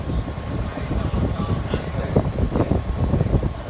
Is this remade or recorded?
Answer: remade